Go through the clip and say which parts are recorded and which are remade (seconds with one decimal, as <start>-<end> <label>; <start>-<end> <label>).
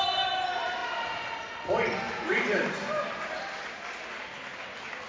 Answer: 0.0-0.8 recorded; 0.8-3.9 remade; 3.9-5.1 recorded